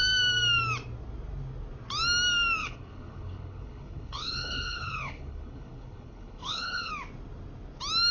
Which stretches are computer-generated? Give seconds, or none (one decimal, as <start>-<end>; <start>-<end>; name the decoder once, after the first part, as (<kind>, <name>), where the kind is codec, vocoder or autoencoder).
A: 2.6-6.9 (codec, HILCodec)